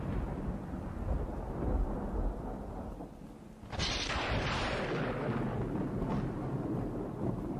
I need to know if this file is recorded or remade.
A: recorded